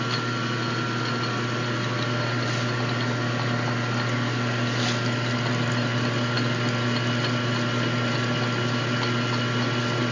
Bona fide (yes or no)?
yes